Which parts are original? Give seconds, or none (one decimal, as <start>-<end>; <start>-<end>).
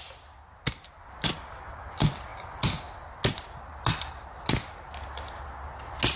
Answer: 0.0-6.2